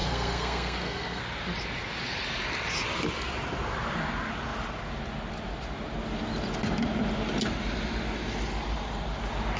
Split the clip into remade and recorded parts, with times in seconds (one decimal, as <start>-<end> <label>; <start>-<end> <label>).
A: 0.0-1.2 remade; 1.2-9.6 recorded